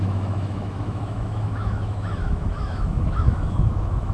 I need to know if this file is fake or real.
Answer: fake